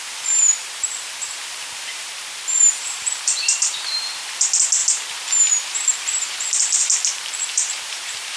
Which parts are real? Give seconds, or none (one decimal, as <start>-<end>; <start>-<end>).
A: 2.1-2.8